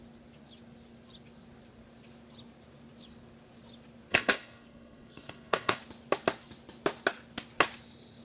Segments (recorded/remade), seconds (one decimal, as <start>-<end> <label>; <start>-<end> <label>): 0.0-4.1 recorded; 4.1-5.8 remade; 5.8-8.2 recorded